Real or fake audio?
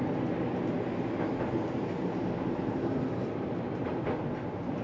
real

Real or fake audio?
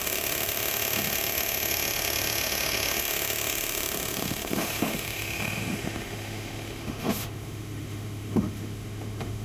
fake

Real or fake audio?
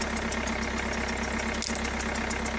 real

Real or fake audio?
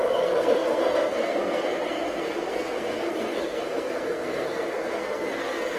fake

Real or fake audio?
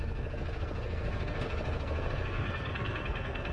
fake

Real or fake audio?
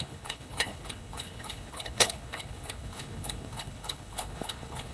fake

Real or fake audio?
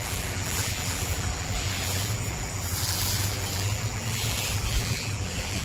fake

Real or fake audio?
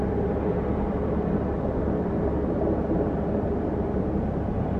real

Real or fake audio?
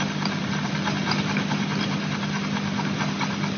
real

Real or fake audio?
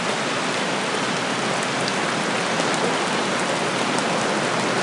real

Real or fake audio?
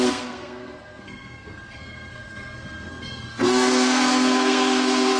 fake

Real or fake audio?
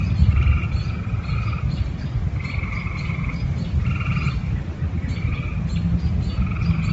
real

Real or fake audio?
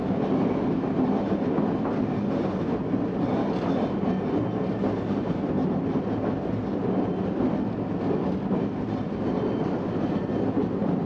real